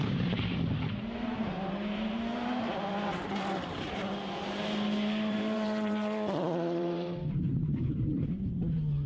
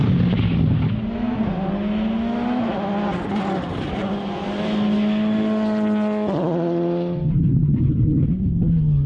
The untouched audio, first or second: second